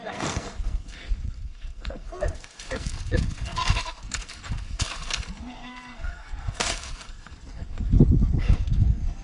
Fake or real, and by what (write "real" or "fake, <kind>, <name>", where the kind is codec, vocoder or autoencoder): fake, codec, SNAC